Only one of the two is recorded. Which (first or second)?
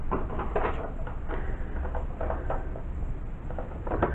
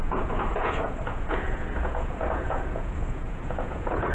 first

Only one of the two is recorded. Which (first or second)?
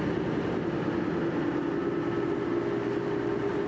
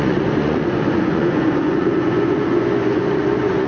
first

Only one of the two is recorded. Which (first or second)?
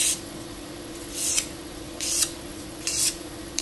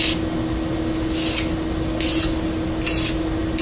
second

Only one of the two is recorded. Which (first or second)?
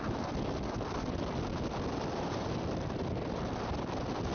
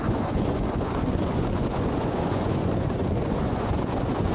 first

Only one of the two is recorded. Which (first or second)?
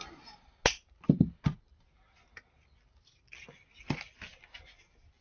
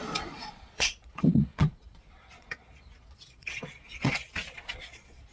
first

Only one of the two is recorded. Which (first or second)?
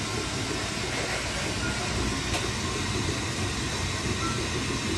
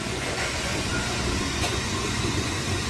first